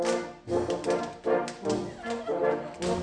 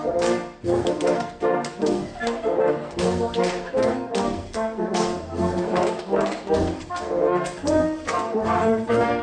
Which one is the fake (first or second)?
second